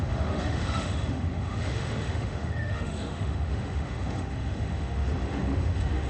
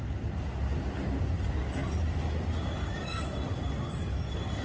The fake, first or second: first